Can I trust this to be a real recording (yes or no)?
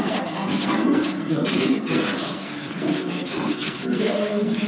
no